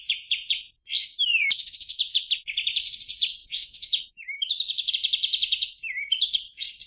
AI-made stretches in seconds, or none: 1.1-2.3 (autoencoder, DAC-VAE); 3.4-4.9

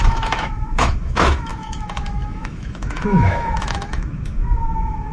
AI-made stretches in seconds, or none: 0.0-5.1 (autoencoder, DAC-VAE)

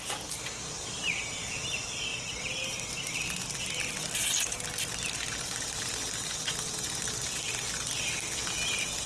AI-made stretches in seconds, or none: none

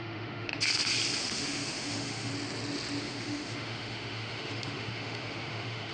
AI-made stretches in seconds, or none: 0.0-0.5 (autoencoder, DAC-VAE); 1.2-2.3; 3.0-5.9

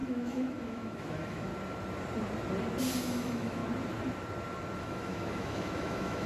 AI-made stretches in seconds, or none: 0.0-1.5 (autoencoder, DAC-VAE); 3.0-3.6; 4.8-6.3